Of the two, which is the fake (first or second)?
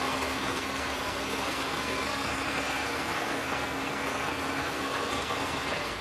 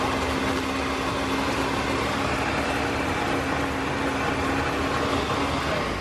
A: first